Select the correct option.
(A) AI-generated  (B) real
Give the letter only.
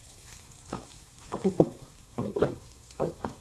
A